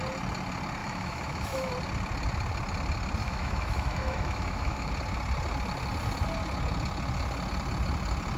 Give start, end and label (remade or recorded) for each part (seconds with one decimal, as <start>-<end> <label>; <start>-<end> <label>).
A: 0.0-0.8 recorded; 0.8-1.7 remade; 1.7-3.2 recorded; 3.2-4.9 remade; 4.9-8.4 recorded